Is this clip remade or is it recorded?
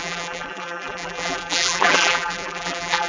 remade